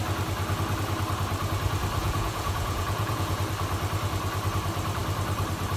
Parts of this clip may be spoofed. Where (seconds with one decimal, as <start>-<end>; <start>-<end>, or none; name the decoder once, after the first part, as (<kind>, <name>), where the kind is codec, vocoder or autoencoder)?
2.0-3.4 (vocoder, Vocos)